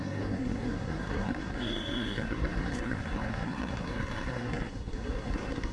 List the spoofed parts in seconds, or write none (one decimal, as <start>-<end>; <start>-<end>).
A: 0.0-5.7